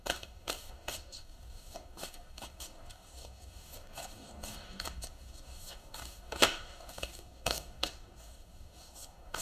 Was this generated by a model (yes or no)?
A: yes